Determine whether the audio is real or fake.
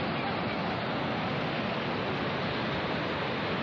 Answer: real